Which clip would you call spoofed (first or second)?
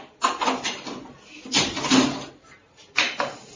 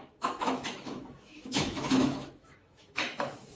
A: second